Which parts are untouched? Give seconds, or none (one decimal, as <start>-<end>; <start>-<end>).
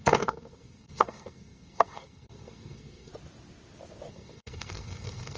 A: 3.1-4.1